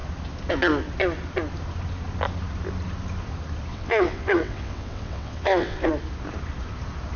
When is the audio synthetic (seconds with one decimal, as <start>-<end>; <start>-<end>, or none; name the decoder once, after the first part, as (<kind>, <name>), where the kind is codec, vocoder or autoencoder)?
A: 3.7-5.9 (vocoder, WaveNeXt)